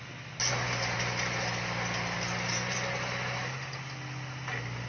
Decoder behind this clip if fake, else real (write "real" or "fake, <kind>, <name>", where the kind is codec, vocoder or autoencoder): real